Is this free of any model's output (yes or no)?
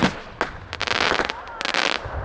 yes